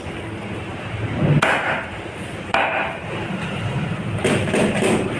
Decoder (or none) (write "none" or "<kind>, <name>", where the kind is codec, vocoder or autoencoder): none